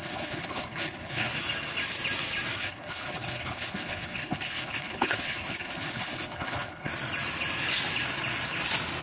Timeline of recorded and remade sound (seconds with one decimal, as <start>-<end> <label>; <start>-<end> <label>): 0.0-1.3 remade; 1.3-2.6 recorded; 2.6-6.9 remade; 6.9-9.0 recorded